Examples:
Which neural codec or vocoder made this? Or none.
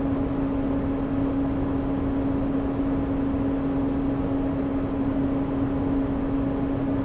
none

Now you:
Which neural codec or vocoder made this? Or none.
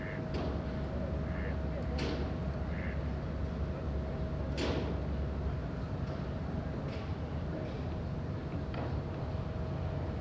none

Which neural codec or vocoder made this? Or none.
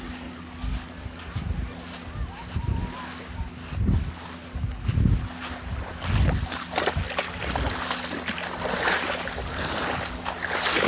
none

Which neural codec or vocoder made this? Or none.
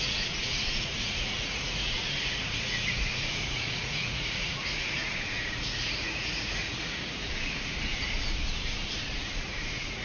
vocoder, Vocos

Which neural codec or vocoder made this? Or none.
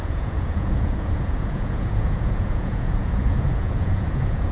vocoder, Vocos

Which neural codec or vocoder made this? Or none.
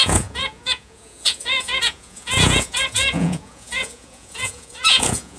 vocoder, Vocos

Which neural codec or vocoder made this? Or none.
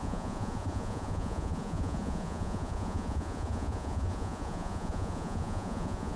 vocoder, Vocos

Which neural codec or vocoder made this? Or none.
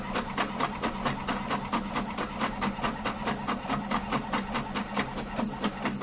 none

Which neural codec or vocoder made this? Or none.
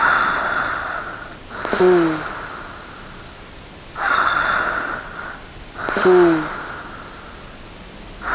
none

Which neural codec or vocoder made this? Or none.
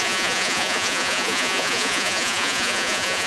vocoder, Vocos